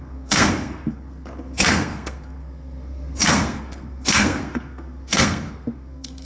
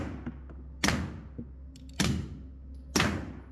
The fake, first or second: first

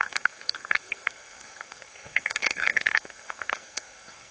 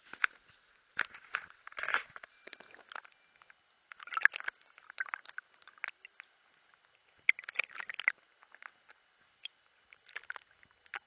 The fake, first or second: first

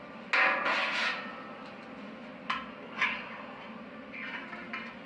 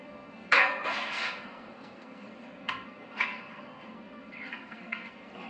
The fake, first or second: second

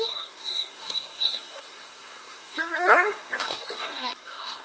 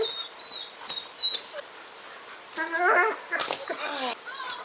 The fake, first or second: first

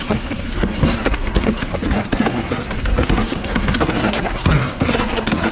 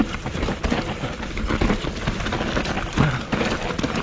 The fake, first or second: first